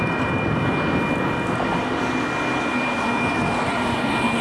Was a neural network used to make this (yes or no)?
no